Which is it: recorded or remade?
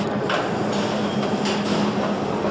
recorded